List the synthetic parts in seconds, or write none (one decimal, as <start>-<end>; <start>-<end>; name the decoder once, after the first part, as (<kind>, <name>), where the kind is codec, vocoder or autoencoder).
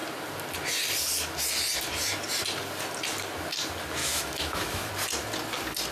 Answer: 4.0-4.9 (autoencoder, DAC-VAE)